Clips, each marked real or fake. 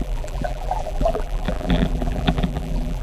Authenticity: fake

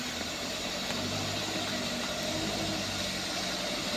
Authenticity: real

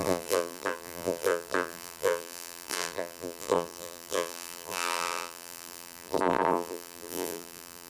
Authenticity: fake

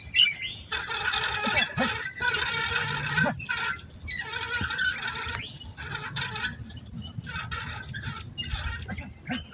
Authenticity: real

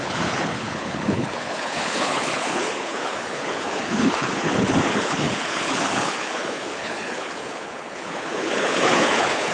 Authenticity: fake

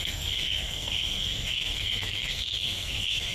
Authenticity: fake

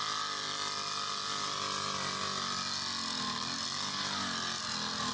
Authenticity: real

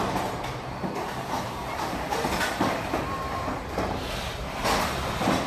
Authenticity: real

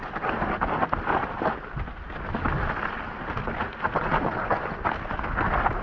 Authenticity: real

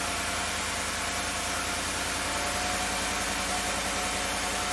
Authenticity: real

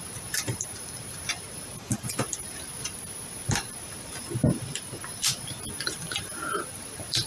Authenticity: fake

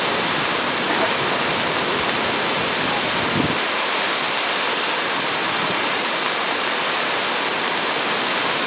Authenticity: real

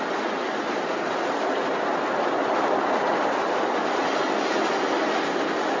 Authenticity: real